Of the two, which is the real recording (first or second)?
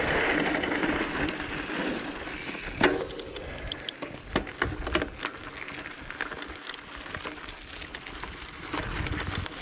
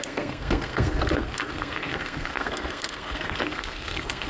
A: first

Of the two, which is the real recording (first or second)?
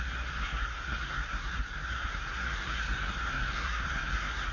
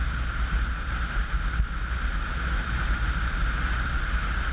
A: second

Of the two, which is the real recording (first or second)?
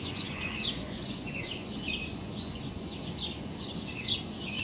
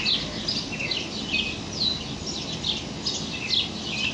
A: second